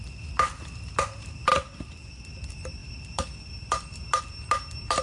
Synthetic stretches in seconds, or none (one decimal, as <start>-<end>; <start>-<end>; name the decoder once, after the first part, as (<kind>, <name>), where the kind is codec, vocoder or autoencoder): none